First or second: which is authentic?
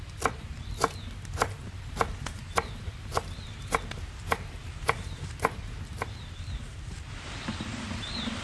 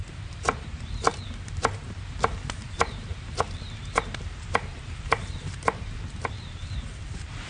first